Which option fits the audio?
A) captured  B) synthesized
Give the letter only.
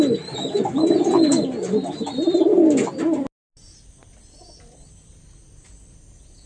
A